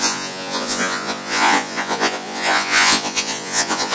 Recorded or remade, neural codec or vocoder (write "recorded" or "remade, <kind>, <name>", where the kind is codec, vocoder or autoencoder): remade, vocoder, Vocos